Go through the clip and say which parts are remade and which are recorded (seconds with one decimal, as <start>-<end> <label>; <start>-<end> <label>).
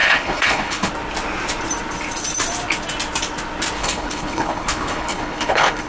0.0-0.9 remade; 0.9-3.8 recorded; 3.8-5.9 remade